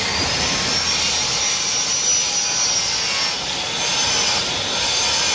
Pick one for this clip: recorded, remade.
recorded